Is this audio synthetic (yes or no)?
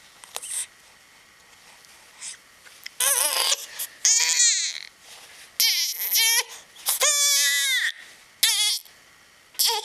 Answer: no